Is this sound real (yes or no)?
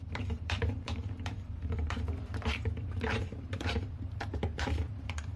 no